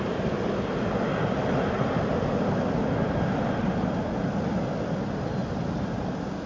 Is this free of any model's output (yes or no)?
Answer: yes